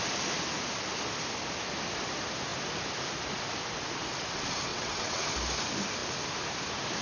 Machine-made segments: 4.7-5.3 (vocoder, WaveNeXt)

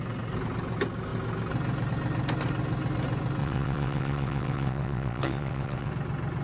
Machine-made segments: 3.4-5.9 (vocoder, WaveNeXt)

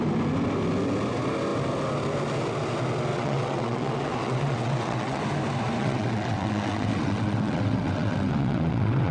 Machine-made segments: 3.1-5.2 (vocoder, WaveNeXt); 5.8-9.1

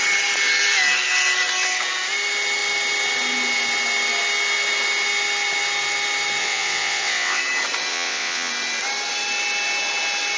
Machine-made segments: 6.4-7.4 (vocoder, WaveNeXt); 7.9-8.5

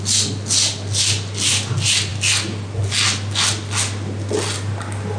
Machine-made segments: none

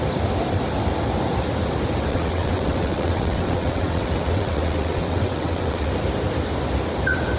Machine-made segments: 2.1-5.9 (vocoder, WaveNeXt)